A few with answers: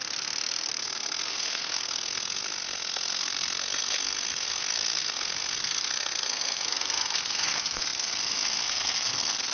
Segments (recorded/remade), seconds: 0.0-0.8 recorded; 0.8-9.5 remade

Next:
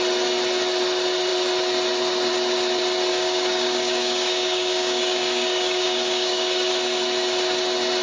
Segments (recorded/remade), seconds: 0.0-3.1 recorded; 3.1-6.7 remade; 6.7-8.0 recorded